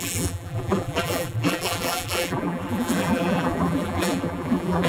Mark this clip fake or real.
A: fake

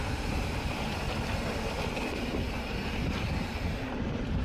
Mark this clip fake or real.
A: real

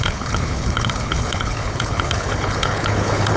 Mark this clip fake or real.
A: fake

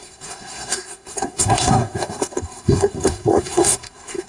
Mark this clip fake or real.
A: fake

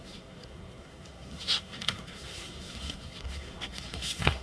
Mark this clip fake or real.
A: fake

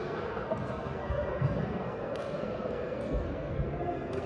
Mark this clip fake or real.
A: fake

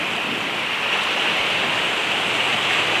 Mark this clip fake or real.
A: real